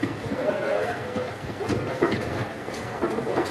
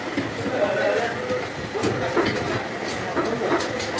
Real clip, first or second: second